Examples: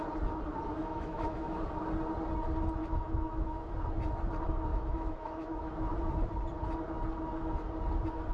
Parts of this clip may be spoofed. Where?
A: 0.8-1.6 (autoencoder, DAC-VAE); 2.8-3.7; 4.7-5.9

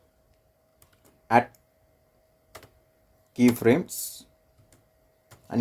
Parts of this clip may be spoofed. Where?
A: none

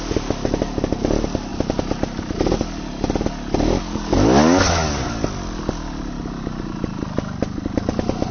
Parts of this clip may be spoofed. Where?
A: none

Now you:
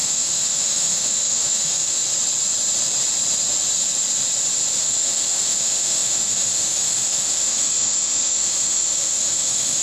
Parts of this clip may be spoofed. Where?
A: 0.0-2.0 (autoencoder, DAC-VAE); 4.8-9.8

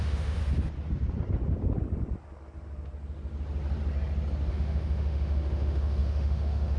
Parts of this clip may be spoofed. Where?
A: 0.0-0.4 (autoencoder, DAC-VAE); 4.5-6.8

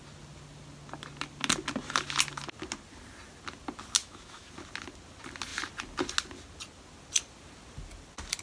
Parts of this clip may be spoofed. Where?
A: 4.0-4.5 (autoencoder, DAC-VAE)